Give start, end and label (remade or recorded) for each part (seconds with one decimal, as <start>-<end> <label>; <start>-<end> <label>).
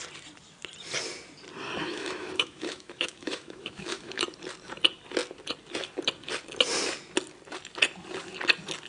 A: 0.0-1.8 recorded; 1.8-4.2 remade; 4.2-8.9 recorded